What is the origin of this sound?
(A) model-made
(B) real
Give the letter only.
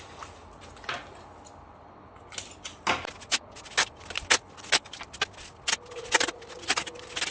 B